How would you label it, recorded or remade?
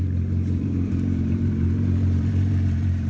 remade